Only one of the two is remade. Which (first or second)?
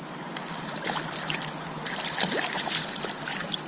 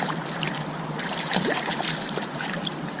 second